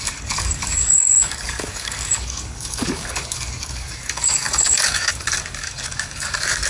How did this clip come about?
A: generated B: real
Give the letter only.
A